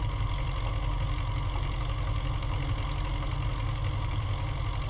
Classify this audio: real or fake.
real